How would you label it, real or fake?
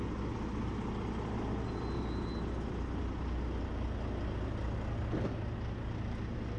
real